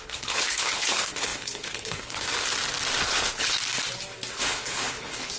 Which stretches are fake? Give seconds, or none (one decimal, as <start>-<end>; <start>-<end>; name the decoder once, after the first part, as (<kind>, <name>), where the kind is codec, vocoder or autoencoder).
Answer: 0.0-2.5 (codec, HILCodec); 3.0-3.6; 4.3-5.4